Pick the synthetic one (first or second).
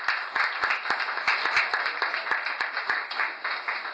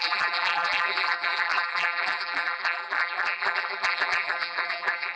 second